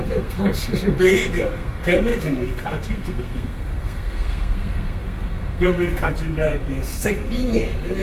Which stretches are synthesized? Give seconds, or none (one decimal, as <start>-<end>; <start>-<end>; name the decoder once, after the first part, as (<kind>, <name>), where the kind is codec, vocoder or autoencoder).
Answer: 0.0-8.0 (codec, SNAC)

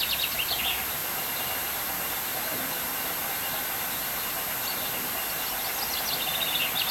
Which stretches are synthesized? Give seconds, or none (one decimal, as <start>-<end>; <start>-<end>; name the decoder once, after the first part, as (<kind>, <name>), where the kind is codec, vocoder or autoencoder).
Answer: none

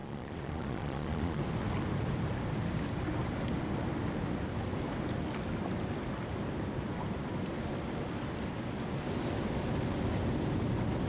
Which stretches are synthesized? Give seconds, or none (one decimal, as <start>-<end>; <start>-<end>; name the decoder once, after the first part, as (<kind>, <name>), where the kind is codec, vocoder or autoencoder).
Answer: 0.0-1.4 (vocoder, Vocos)

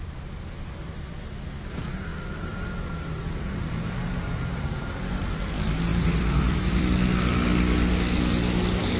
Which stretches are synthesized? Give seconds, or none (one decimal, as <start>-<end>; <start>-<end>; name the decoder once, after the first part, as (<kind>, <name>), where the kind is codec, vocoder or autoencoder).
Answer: 2.1-4.9 (vocoder, BigVGAN v2); 5.9-6.8

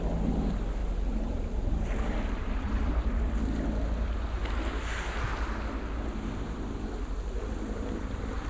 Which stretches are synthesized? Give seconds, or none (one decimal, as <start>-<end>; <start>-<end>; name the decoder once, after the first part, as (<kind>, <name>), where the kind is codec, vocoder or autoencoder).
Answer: 0.8-3.3 (vocoder, BigVGAN v2)

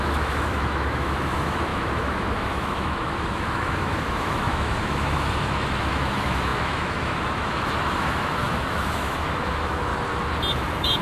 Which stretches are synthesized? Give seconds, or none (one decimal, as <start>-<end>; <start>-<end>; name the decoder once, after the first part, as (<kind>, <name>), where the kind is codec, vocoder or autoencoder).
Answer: 0.0-9.9 (autoencoder, DAC-VAE); 10.5-11.0